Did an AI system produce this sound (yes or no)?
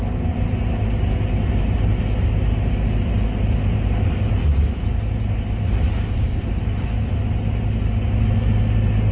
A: no